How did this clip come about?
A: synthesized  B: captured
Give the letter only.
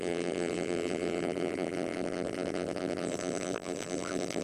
A